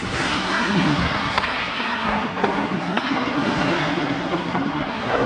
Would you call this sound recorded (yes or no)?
no